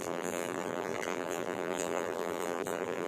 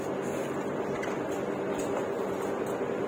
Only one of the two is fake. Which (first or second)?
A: first